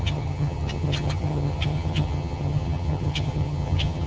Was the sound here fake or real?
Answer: fake